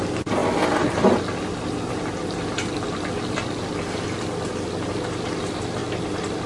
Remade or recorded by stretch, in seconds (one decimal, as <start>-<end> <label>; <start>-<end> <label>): 0.0-0.4 remade; 0.4-1.6 recorded; 1.6-5.8 remade; 5.8-6.5 recorded